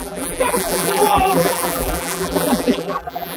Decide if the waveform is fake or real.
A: fake